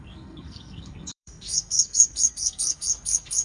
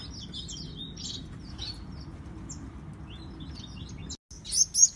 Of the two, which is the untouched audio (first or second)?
second